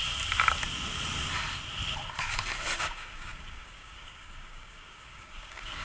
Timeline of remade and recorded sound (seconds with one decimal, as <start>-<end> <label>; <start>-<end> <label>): 0.0-2.8 recorded; 2.8-5.8 remade